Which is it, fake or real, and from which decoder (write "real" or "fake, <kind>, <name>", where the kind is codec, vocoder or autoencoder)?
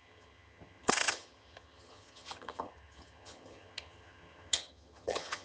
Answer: fake, vocoder, HiFi-GAN